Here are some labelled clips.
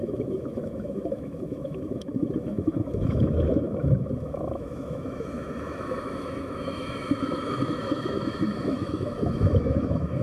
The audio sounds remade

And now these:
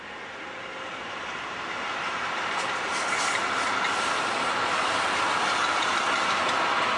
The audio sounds recorded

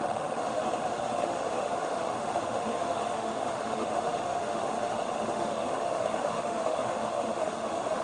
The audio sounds remade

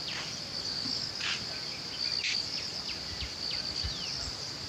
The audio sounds recorded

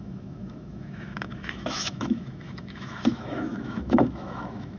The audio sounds remade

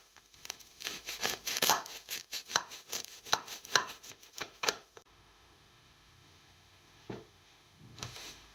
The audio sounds remade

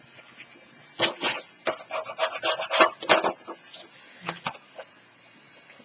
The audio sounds recorded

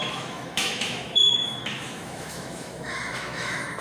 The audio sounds remade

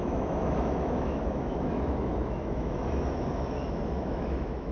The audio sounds remade